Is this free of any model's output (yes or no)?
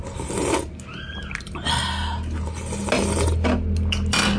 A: yes